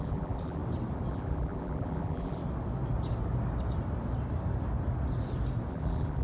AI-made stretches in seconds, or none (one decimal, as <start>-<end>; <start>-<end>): 0.0-0.6; 1.1-2.4; 5.7-6.2